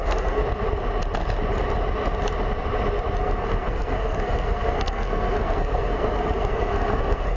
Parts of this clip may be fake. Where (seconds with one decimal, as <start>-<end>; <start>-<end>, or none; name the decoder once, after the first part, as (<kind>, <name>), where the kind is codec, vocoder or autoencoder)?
0.0-0.4 (codec, SNAC); 3.2-7.4